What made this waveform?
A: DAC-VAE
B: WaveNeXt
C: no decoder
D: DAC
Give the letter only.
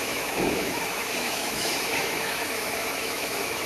A